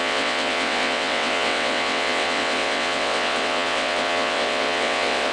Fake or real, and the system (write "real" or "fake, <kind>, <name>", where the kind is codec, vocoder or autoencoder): fake, vocoder, WaveNeXt